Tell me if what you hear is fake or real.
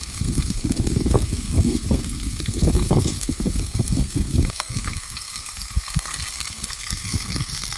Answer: fake